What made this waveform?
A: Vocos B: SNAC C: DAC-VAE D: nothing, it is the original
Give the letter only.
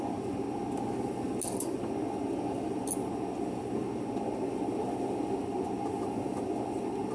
D